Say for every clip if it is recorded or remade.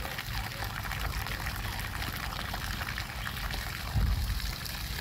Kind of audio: recorded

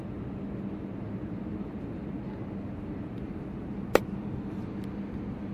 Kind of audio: recorded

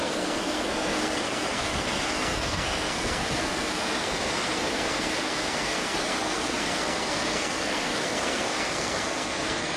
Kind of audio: remade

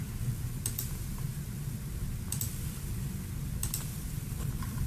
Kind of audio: recorded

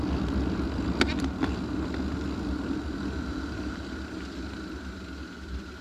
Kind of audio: recorded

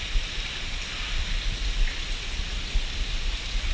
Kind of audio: recorded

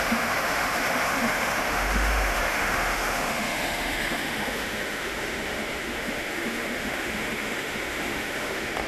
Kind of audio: remade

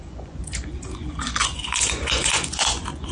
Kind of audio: remade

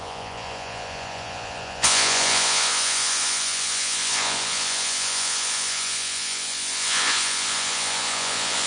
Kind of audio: remade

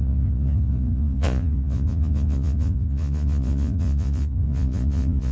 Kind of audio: remade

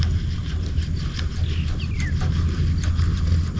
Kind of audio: recorded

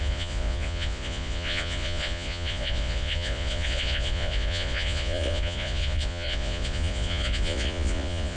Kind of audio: remade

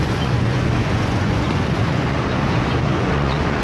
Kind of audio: remade